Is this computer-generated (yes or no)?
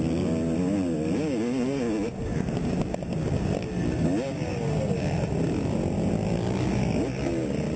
no